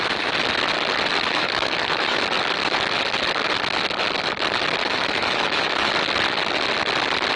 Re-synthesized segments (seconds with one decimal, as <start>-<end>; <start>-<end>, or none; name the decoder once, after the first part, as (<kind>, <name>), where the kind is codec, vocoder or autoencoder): 1.1-2.2 (autoencoder, DAC-VAE); 4.8-5.9